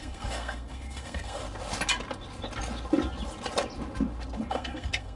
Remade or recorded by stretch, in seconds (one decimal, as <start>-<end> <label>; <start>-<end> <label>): 0.0-1.4 remade; 1.4-4.5 recorded; 4.5-5.2 remade